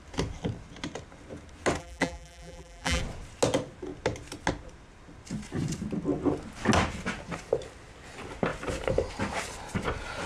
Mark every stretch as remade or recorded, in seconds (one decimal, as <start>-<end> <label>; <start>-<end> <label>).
0.0-1.8 recorded; 1.8-3.0 remade; 3.0-10.3 recorded